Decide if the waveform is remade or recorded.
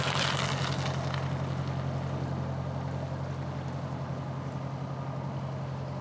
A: recorded